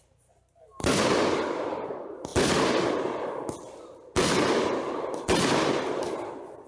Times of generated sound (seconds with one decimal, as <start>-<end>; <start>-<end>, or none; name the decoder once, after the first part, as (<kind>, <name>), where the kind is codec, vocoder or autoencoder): none